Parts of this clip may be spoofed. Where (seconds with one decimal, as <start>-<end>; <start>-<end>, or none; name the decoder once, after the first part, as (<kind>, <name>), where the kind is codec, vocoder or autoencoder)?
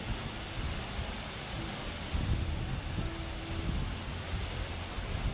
none